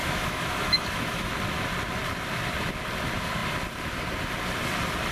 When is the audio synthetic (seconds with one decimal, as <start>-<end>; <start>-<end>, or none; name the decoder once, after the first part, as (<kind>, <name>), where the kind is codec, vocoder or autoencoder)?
0.0-1.3 (autoencoder, DAC-VAE)